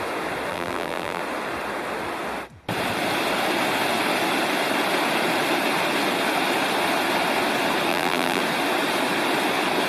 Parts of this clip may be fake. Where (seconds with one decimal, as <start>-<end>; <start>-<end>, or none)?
0.5-1.2; 7.9-8.4